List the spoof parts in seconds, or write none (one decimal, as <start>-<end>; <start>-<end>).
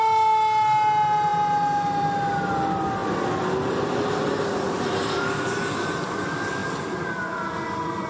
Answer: none